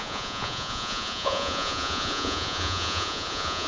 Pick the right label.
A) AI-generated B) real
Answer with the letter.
A